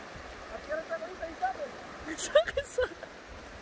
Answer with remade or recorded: recorded